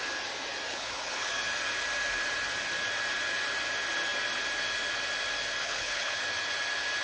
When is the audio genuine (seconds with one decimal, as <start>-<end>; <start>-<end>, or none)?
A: 0.0-0.7; 1.3-5.6; 6.2-7.0